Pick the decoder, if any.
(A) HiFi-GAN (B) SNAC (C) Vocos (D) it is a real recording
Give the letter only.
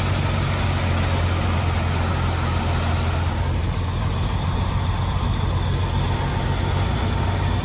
D